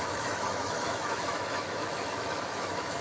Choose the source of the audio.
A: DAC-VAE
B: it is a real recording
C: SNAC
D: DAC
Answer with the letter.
A